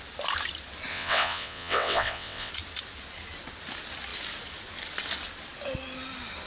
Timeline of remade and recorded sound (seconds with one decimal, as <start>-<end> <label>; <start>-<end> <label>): 0.0-0.9 recorded; 0.9-2.5 remade; 2.5-6.5 recorded